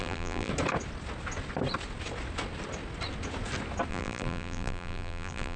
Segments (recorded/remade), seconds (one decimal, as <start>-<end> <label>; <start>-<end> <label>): 0.0-0.5 remade; 0.5-3.9 recorded; 3.9-5.6 remade